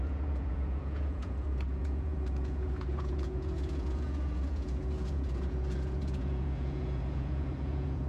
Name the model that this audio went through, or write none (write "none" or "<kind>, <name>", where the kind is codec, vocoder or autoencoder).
vocoder, Vocos